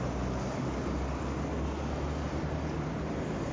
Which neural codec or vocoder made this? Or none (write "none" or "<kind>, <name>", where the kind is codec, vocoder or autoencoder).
none